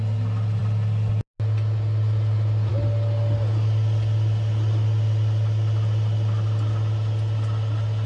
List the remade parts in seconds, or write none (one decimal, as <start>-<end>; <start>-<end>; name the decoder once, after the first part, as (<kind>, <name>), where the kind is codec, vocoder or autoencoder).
none